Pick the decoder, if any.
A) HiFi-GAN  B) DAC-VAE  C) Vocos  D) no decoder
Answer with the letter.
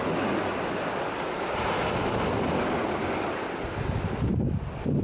D